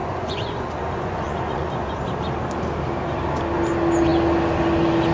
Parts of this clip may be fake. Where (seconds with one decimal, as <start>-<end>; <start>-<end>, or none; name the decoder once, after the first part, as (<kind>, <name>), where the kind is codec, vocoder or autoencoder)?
0.0-2.0 (vocoder, Vocos)